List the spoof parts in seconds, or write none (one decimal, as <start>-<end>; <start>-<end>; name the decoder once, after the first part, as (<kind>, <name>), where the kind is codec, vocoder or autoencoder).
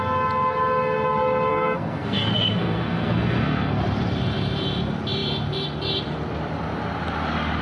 1.5-3.8 (codec, SNAC)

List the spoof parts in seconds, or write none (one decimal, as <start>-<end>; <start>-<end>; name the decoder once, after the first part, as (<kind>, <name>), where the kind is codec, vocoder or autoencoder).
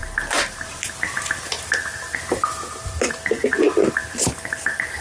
none